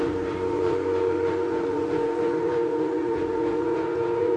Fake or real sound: fake